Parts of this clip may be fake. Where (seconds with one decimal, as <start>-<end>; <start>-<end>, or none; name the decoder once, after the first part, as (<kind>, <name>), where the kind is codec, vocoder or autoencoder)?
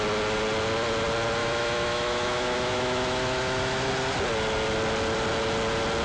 1.4-3.9 (autoencoder, DAC-VAE)